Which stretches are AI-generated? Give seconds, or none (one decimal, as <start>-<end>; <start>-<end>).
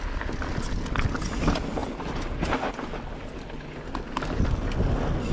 none